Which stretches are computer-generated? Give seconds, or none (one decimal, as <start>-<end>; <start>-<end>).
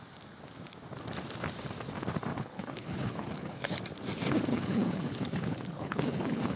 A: 2.3-3.8; 4.5-6.6